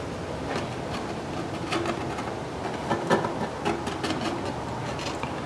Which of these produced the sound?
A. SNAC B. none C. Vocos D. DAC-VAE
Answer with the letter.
B